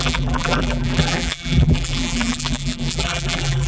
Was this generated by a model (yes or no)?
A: yes